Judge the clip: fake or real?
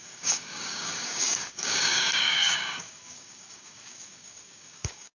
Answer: fake